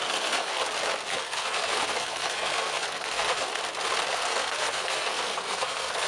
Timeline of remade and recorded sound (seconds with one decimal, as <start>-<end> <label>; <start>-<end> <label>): 0.0-0.6 remade; 0.6-1.1 recorded; 1.1-3.5 remade; 3.5-4.1 recorded; 4.1-6.1 remade